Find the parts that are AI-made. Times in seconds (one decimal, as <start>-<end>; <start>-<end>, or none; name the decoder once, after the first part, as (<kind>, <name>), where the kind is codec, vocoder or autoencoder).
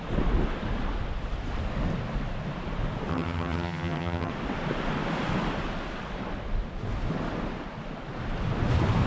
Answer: 3.1-4.3 (vocoder, HiFi-GAN)